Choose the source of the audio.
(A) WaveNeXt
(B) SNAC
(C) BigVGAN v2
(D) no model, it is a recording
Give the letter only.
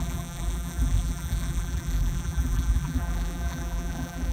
C